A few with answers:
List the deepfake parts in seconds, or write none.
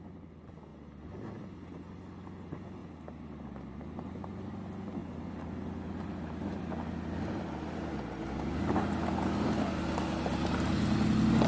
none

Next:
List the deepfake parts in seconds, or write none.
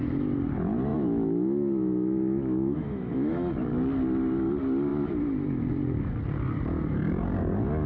0.9-3.5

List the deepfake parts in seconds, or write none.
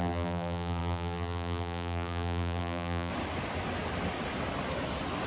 0.0-3.1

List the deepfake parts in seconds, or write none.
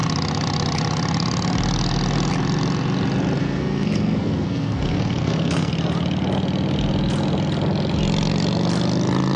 3.4-5.7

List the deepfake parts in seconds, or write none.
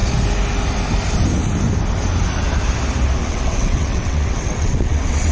3.2-5.3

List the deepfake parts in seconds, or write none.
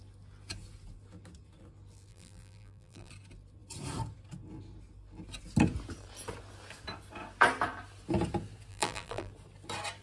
2.1-3.1; 8.7-9.3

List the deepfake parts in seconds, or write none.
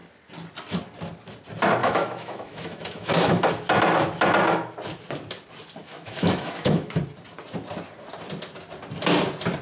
1.8-3.5; 5.8-7.0